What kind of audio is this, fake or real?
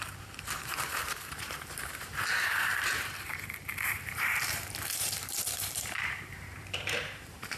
fake